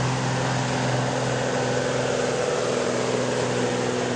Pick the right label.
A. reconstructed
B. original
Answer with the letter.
B